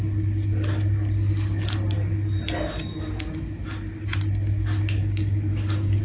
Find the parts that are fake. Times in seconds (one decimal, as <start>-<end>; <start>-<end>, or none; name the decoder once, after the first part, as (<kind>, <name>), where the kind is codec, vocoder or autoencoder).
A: 5.0-6.0 (codec, DAC)